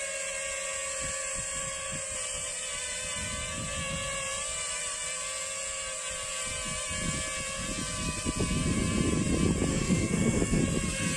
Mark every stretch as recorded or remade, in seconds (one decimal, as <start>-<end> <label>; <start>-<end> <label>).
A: 0.0-9.7 recorded; 9.7-10.6 remade; 10.6-11.2 recorded